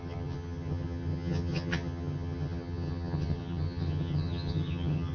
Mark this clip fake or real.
fake